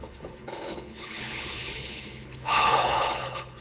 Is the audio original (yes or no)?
no